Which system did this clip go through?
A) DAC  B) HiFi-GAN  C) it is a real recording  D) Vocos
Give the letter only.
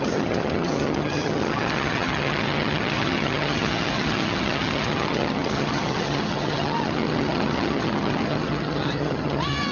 B